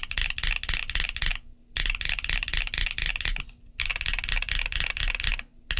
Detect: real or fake real